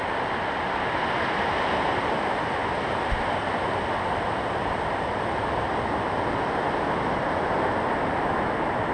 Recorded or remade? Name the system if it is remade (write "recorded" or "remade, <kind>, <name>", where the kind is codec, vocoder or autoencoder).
recorded